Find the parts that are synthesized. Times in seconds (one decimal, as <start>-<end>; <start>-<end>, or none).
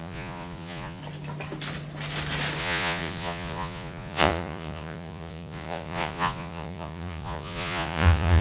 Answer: 0.0-1.0; 2.6-8.4